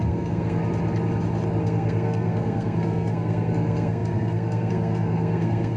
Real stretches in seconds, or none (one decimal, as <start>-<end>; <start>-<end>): 0.6-1.6